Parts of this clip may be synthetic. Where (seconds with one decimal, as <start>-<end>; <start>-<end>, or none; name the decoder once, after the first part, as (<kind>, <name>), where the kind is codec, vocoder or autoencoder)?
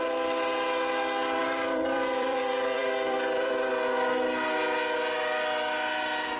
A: 1.4-3.7 (vocoder, BigVGAN v2)